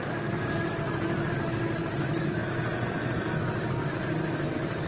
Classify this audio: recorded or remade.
remade